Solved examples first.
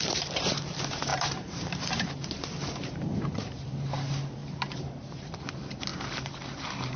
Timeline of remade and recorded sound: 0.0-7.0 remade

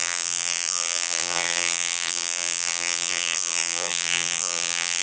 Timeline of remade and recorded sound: 0.0-5.0 remade